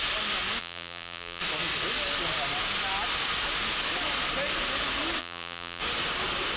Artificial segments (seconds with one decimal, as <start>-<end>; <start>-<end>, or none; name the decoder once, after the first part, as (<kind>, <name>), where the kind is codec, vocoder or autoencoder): 0.6-1.4 (vocoder, BigVGAN v2); 5.2-5.8